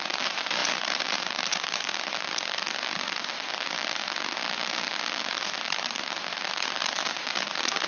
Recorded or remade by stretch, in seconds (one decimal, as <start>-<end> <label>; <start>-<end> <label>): 0.0-1.9 remade; 1.9-6.6 recorded; 6.6-7.9 remade